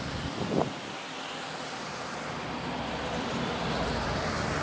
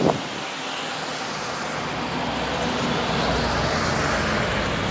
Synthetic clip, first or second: first